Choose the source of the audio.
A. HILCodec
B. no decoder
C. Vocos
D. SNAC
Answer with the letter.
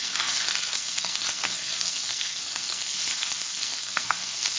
D